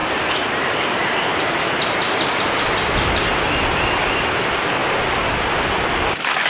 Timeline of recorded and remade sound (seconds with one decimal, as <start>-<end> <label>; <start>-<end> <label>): 0.0-6.5 recorded